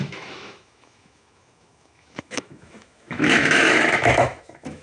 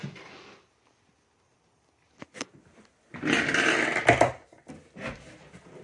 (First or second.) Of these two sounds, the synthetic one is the first